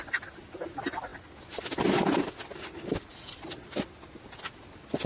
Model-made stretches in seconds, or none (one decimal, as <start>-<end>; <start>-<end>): none